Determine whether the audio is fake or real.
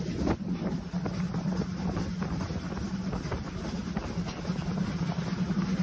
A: real